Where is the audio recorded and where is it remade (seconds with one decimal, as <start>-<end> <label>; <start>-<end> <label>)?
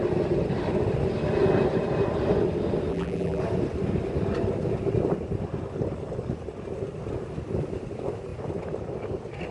0.0-2.9 recorded; 2.9-3.4 remade; 3.4-9.5 recorded